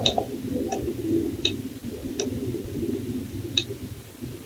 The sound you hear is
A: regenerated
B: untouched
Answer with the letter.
A